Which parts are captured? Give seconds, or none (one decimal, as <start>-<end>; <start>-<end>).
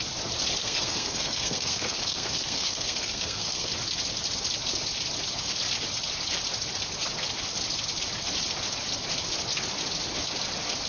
0.0-0.6; 3.7-10.9